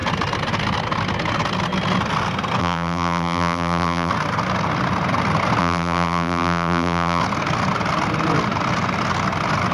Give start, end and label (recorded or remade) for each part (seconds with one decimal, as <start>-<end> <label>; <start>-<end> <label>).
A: 0.0-2.6 recorded; 2.6-4.1 remade; 4.1-5.6 recorded; 5.6-7.2 remade; 7.2-9.7 recorded